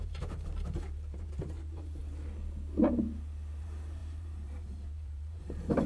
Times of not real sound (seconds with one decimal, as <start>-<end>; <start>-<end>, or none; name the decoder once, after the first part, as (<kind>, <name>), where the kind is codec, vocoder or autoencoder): 0.0-2.0 (vocoder, BigVGAN v2); 3.6-5.9